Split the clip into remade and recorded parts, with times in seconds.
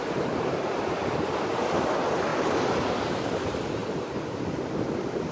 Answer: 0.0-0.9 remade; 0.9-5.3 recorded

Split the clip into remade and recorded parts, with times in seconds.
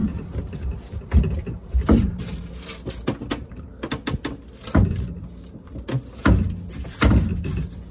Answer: 0.0-1.6 recorded; 1.6-2.2 remade; 2.2-7.9 recorded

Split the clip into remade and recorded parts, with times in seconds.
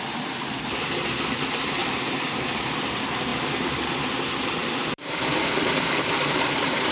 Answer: 0.0-1.8 recorded; 1.8-2.5 remade; 2.5-4.6 recorded; 4.6-5.4 remade; 5.4-6.9 recorded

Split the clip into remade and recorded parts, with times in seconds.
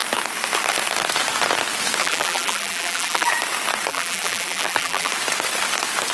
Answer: 0.0-2.0 recorded; 2.0-3.3 remade; 3.3-3.9 recorded; 3.9-5.1 remade; 5.1-6.1 recorded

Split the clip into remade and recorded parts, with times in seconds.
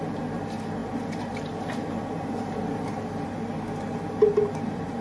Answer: 0.0-5.0 recorded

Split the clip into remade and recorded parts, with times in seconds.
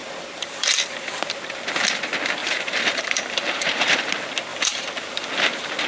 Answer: 0.0-1.1 remade; 1.1-2.4 recorded; 2.4-4.0 remade; 4.0-4.5 recorded; 4.5-5.9 remade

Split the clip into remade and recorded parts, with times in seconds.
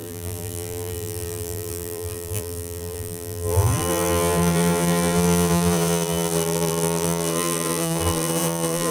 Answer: 0.0-8.9 remade